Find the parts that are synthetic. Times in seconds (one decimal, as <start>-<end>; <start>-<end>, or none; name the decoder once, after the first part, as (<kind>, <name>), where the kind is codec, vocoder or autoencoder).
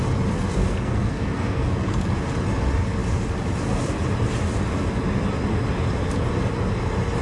0.5-2.1 (codec, SNAC)